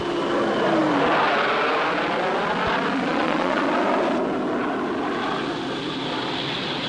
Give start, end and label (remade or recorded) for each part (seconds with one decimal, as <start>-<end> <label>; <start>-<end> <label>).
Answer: 0.0-3.1 recorded; 3.1-3.6 remade; 3.6-6.9 recorded